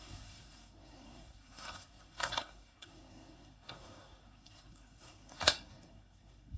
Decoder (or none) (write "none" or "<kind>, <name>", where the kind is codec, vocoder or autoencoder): codec, SNAC